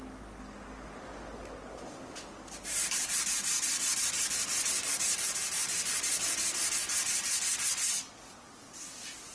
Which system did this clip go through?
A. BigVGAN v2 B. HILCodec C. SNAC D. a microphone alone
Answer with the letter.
D